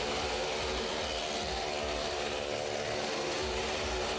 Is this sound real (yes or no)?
yes